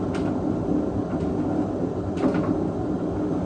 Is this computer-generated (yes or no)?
no